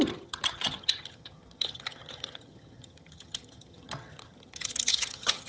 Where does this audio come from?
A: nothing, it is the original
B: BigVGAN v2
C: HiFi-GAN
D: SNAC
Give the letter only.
C